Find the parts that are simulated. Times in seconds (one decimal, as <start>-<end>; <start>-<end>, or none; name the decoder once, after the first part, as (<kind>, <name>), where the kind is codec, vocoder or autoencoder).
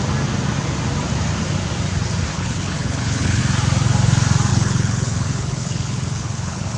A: 2.3-3.4 (codec, HILCodec); 4.5-6.8